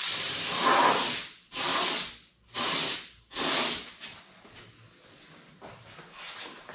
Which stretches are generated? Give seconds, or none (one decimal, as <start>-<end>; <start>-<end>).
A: 0.0-1.7; 5.7-6.7